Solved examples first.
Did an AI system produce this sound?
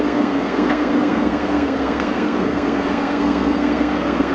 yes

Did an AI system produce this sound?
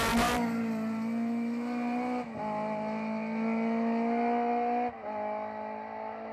no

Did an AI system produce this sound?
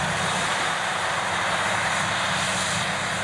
no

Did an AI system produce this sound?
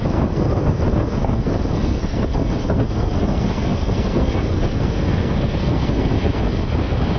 yes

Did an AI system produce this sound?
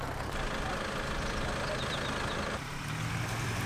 no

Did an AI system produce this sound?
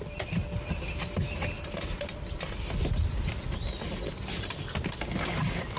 no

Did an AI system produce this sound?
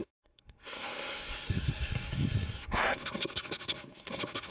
yes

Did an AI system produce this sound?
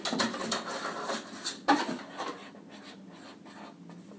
no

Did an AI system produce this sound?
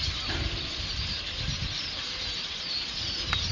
no